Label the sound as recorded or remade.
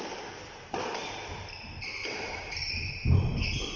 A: recorded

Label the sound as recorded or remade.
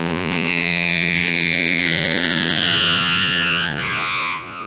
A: remade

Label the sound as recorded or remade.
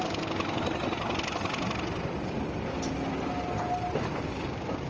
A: recorded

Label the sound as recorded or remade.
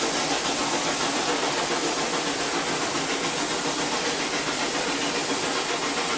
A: recorded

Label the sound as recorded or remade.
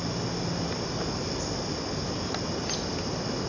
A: recorded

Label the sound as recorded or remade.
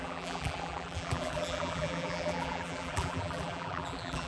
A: remade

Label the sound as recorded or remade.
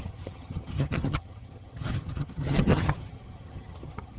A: remade